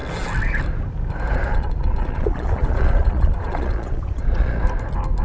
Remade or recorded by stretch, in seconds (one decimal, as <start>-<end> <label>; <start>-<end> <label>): 0.0-1.5 recorded; 1.5-4.6 remade; 4.6-5.2 recorded